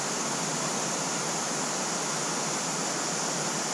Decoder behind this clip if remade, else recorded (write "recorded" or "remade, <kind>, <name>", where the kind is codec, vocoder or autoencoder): recorded